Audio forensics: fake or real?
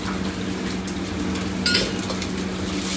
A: real